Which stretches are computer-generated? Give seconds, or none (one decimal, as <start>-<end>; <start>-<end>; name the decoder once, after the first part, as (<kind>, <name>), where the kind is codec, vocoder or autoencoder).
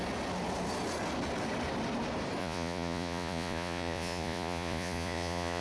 2.4-5.6 (vocoder, Vocos)